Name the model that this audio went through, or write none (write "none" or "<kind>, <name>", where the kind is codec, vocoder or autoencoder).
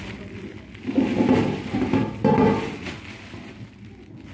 none